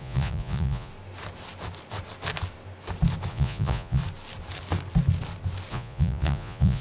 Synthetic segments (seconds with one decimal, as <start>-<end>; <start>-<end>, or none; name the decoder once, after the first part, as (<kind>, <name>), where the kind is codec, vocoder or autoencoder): 0.0-0.9 (vocoder, Vocos); 3.3-4.0; 5.7-6.8